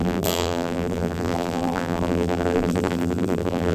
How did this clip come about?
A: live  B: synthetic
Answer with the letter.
B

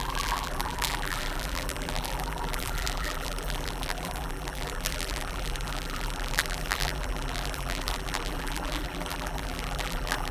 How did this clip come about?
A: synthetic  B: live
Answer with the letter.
A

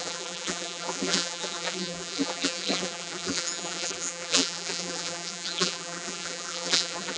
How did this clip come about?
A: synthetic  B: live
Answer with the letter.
A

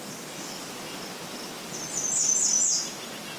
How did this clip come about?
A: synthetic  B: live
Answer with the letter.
B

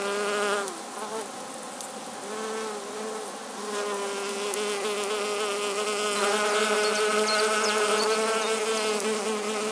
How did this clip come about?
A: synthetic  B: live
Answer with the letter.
B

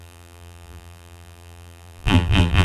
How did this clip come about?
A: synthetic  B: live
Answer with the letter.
A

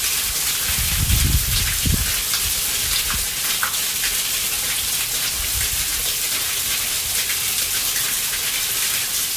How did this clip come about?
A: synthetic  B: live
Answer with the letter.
B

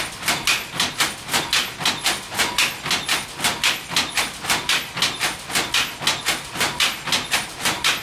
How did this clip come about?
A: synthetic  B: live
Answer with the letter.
B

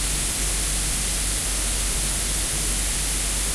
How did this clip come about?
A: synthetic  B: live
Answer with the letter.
B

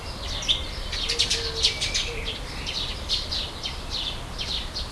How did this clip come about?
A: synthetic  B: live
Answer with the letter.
A